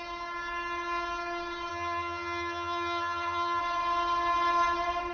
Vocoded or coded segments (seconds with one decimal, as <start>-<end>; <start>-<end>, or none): 1.7-3.6